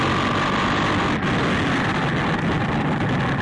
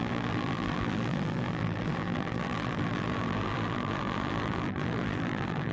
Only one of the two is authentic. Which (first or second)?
first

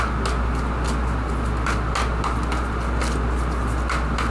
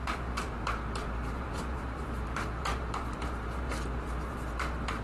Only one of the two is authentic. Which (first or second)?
first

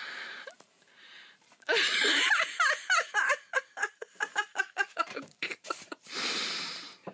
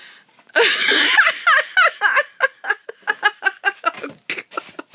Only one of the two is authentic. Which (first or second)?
second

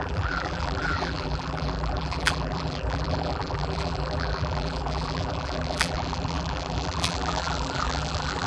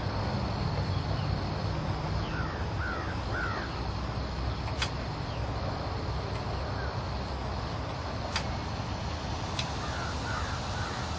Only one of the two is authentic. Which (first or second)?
second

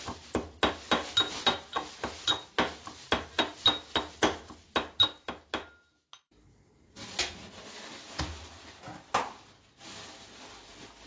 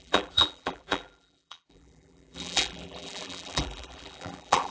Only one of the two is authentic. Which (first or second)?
first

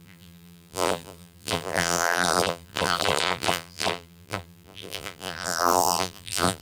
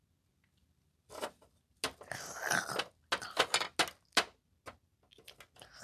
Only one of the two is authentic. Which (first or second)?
second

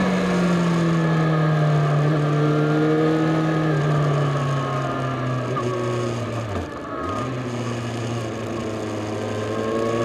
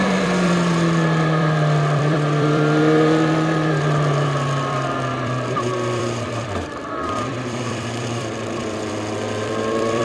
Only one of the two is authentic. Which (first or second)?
first